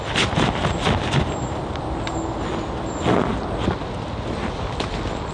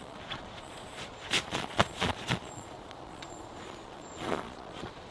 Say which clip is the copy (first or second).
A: second